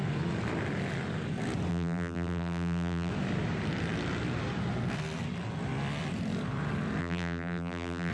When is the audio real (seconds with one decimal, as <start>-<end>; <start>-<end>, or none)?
0.0-1.7; 3.1-7.0